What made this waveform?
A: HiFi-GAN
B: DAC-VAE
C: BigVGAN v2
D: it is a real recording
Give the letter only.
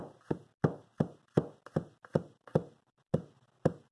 D